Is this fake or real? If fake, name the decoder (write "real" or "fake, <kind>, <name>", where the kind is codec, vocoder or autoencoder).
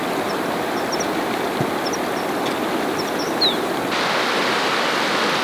real